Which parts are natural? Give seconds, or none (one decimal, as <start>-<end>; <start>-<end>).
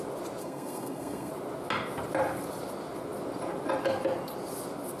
0.0-0.4; 1.3-5.0